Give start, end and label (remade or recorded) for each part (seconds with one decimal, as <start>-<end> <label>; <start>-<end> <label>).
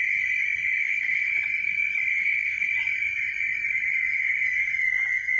0.0-0.8 recorded; 0.8-1.3 remade; 1.3-2.1 recorded; 2.1-2.7 remade; 2.7-5.4 recorded